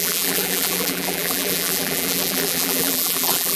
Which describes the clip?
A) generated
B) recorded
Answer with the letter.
A